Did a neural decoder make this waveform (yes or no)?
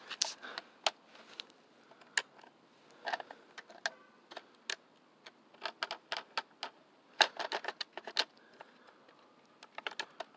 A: no